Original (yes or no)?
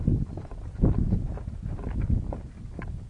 yes